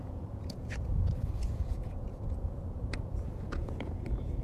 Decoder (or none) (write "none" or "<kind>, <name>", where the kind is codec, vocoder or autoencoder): vocoder, Vocos